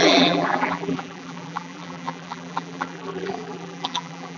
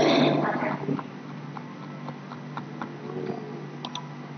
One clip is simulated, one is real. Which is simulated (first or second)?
first